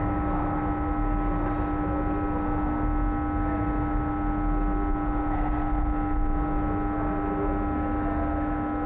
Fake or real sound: real